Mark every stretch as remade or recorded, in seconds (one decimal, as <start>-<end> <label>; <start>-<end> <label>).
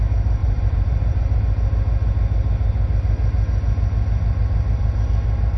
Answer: 0.0-0.4 recorded; 0.4-1.4 remade; 1.4-5.6 recorded